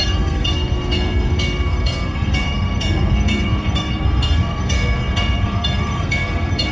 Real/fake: fake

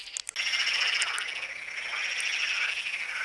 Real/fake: real